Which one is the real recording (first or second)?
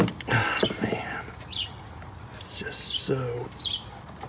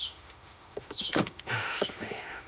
first